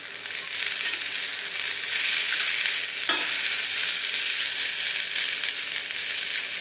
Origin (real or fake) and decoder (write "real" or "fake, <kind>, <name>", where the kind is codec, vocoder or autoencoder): real